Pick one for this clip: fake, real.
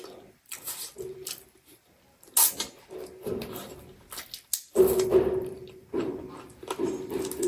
real